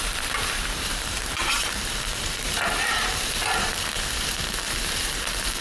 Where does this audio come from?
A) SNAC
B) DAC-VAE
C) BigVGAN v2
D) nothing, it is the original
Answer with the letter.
C